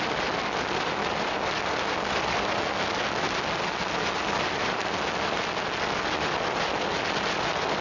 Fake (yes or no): no